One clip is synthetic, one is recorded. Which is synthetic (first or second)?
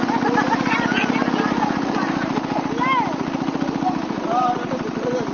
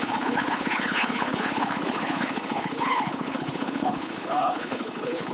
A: second